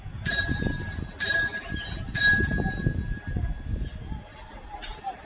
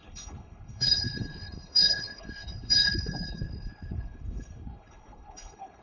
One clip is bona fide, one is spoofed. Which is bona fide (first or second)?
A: first